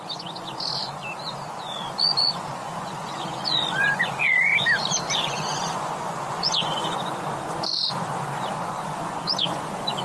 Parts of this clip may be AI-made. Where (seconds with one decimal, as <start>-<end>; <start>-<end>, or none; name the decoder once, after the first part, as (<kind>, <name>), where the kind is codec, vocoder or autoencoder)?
0.0-1.0 (vocoder, Vocos); 1.6-4.5; 5.1-10.0